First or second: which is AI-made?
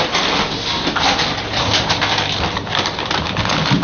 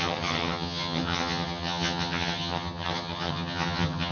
second